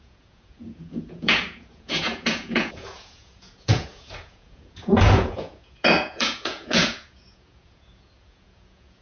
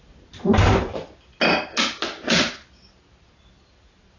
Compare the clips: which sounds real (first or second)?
second